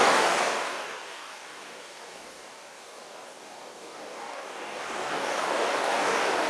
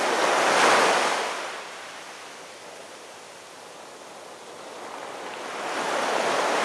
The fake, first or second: first